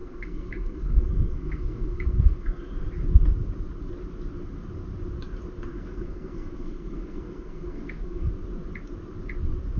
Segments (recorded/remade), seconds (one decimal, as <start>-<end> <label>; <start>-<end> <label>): 0.0-2.6 remade; 2.6-5.7 recorded; 5.7-8.3 remade; 8.3-9.8 recorded